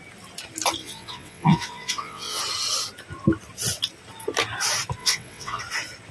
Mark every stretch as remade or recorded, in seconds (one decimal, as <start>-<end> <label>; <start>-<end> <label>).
0.0-0.8 recorded; 0.8-2.4 remade; 2.4-5.0 recorded; 5.0-5.6 remade; 5.6-6.1 recorded